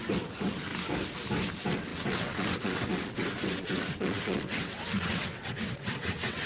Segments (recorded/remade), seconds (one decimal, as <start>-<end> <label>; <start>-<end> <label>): 0.0-0.7 remade; 0.7-1.5 recorded; 1.5-6.5 remade